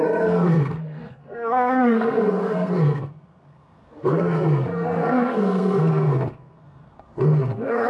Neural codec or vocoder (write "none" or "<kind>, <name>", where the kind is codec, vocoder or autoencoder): codec, SNAC